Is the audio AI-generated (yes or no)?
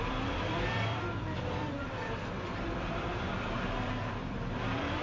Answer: yes